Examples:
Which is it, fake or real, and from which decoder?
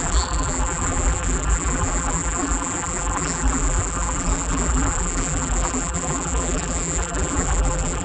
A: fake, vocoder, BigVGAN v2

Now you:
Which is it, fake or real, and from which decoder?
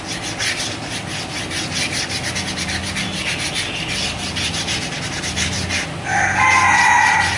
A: real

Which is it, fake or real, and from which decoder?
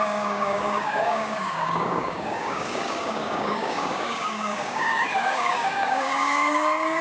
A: fake, codec, DAC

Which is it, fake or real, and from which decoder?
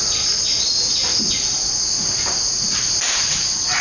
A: real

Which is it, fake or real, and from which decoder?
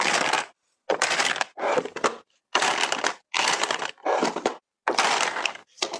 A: real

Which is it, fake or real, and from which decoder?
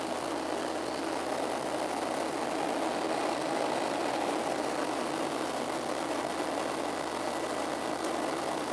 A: real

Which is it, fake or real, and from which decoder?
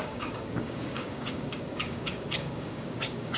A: fake, codec, DAC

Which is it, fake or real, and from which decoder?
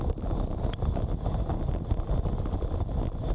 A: real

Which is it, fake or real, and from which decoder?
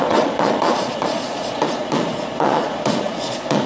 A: fake, vocoder, Vocos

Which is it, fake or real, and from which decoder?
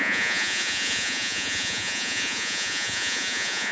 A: fake, vocoder, Vocos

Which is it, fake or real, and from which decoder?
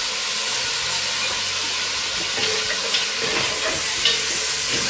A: real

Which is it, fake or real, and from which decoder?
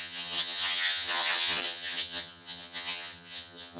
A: fake, vocoder, HiFi-GAN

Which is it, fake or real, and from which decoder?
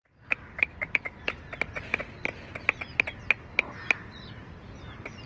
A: real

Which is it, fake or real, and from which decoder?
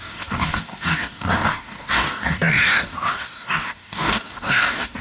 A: fake, codec, DAC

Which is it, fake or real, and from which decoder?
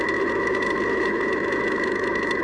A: fake, autoencoder, DAC-VAE